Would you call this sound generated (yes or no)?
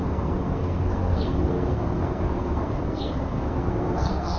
yes